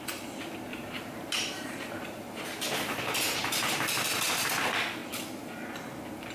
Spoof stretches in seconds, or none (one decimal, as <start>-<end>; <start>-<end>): 0.7-4.5